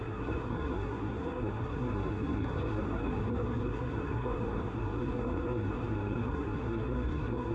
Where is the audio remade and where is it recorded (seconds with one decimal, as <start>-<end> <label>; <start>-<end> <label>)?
0.0-7.5 remade